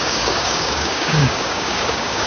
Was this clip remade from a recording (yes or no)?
yes